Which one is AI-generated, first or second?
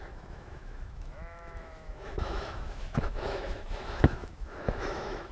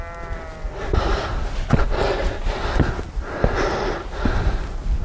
first